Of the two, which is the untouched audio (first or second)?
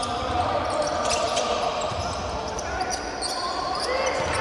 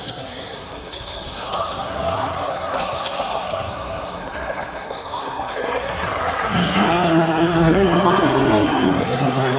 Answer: first